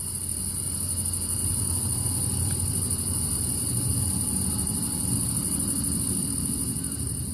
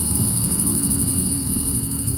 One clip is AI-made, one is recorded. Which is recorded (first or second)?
first